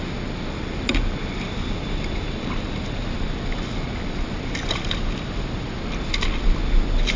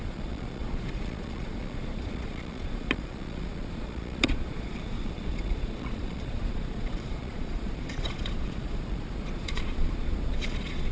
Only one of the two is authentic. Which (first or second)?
first